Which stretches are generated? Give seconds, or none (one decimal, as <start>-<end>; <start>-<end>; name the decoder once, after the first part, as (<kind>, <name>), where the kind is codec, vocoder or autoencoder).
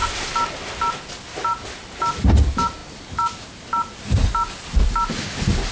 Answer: none